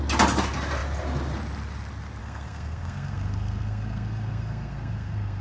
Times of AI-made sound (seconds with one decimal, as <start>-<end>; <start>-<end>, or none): 2.2-5.4